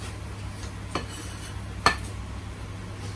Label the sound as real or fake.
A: real